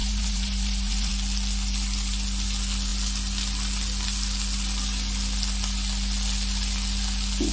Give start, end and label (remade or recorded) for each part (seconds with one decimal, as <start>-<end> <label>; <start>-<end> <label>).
0.0-1.1 remade; 1.1-7.5 recorded